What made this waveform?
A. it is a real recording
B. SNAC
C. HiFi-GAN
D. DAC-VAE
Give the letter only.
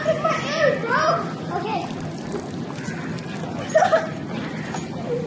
A